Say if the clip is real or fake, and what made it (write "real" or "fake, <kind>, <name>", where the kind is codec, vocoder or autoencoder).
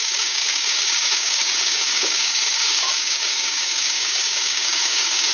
fake, codec, DAC